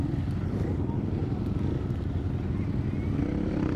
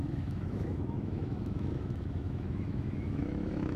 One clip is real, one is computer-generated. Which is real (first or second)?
first